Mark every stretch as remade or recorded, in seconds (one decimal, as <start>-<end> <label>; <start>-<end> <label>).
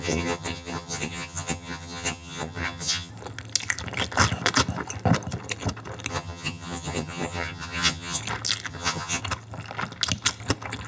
0.0-3.1 remade; 3.1-6.1 recorded; 6.1-8.2 remade; 8.2-8.7 recorded; 8.7-9.2 remade; 9.2-10.9 recorded